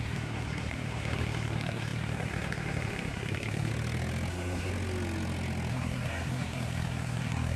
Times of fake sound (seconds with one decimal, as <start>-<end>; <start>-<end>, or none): 0.0-3.7; 4.3-4.7; 5.7-7.6